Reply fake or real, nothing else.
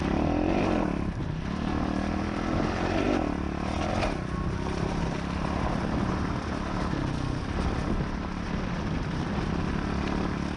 real